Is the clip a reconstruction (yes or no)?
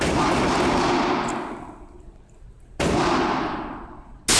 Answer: no